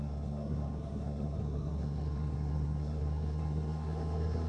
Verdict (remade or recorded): remade